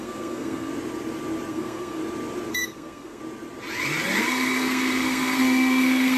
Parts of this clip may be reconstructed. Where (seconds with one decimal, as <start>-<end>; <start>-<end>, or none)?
0.0-0.7; 1.5-2.0; 2.5-3.2; 4.2-6.2